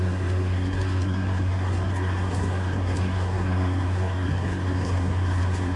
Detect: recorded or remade remade